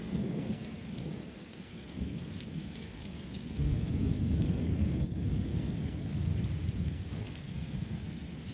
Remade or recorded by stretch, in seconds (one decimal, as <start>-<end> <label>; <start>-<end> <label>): 0.0-6.3 remade; 6.3-6.8 recorded; 6.8-8.5 remade